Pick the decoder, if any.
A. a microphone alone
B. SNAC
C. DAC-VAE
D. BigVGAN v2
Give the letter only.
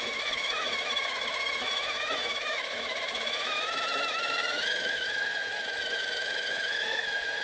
C